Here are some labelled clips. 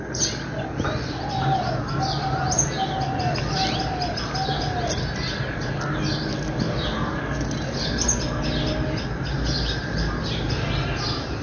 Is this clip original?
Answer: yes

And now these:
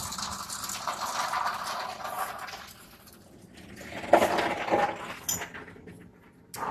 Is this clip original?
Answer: yes